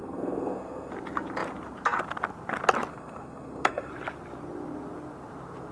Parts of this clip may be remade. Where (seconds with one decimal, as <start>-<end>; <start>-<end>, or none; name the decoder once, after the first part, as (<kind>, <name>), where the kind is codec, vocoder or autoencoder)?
0.0-0.9 (codec, SNAC); 2.9-3.9